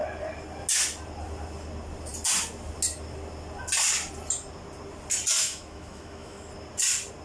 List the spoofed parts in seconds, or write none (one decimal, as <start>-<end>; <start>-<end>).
5.4-6.5